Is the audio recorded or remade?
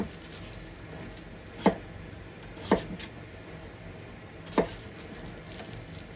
recorded